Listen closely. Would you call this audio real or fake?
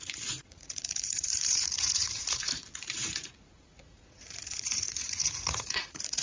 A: fake